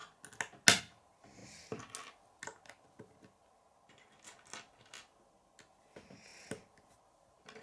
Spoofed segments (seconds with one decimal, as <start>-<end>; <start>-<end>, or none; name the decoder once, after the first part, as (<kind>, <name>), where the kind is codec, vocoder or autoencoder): none